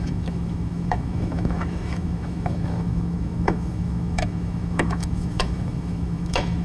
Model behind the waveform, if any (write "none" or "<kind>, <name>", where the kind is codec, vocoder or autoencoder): autoencoder, DAC-VAE